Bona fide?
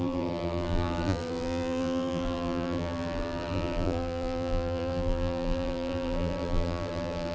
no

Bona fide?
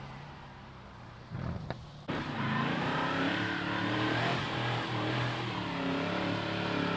no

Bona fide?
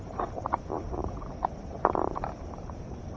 no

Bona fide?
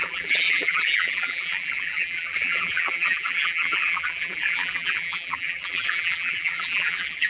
no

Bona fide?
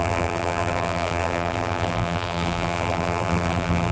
no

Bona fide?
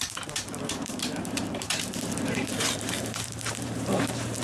no